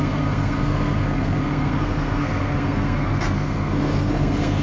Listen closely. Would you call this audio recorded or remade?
remade